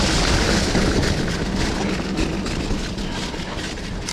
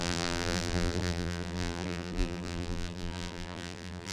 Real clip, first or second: first